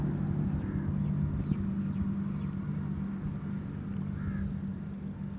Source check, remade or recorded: recorded